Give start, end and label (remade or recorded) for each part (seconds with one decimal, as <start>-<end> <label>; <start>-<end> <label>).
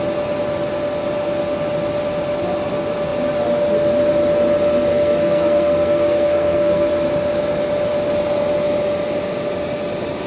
0.0-4.9 recorded; 4.9-6.9 remade; 6.9-10.3 recorded